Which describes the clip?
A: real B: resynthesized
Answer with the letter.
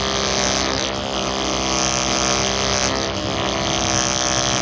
A